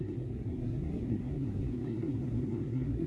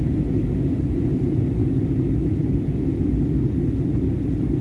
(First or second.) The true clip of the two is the second